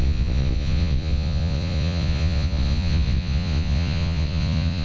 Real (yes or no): no